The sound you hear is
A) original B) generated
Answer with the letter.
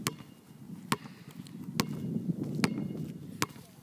A